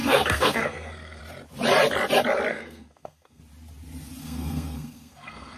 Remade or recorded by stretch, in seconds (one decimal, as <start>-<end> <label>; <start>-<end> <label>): 0.0-1.2 remade; 1.2-2.5 recorded; 2.5-3.4 remade; 3.4-4.2 recorded; 4.2-5.6 remade